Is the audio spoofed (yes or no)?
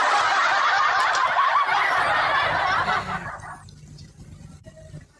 no